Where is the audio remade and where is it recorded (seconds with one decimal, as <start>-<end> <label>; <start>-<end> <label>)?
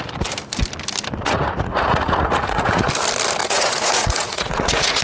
0.0-1.2 recorded; 1.2-2.9 remade; 2.9-3.4 recorded; 3.4-5.0 remade